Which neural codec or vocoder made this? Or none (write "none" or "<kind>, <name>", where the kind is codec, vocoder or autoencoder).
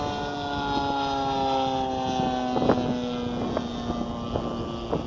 none